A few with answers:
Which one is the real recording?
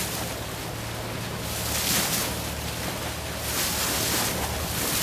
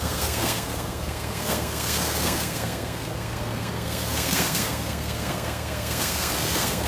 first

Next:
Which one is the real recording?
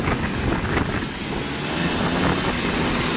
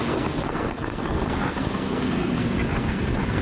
first